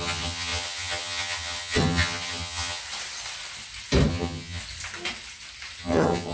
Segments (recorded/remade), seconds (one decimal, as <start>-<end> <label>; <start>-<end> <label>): 0.0-2.8 remade; 2.8-4.1 recorded; 4.1-4.6 remade; 4.6-5.8 recorded; 5.8-6.3 remade